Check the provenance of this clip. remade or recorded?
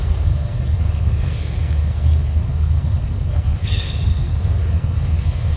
remade